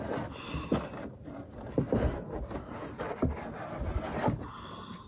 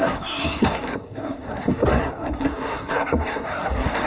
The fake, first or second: second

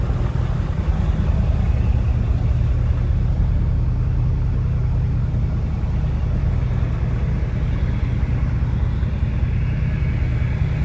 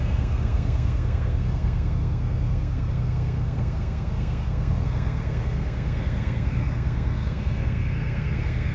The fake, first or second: second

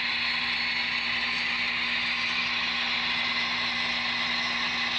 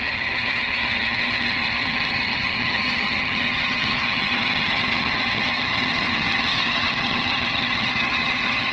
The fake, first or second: second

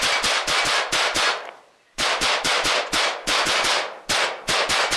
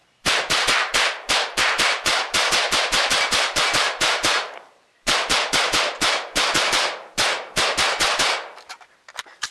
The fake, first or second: second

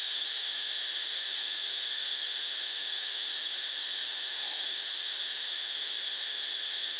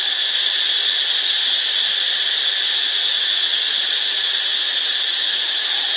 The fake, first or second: first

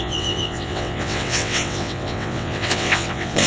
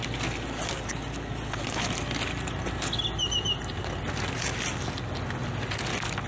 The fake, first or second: first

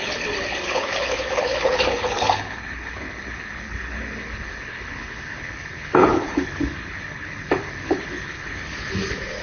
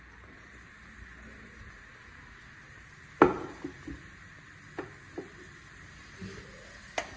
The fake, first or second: first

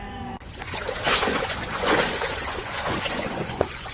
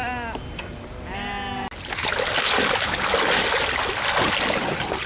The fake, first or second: first